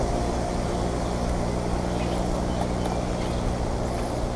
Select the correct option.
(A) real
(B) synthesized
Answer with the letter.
A